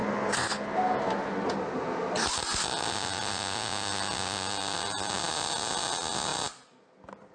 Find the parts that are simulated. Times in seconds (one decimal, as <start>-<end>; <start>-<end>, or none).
none